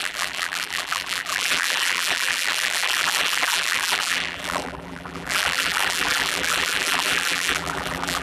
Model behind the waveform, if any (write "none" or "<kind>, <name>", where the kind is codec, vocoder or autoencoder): vocoder, BigVGAN v2